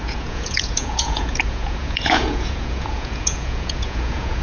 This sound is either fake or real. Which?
fake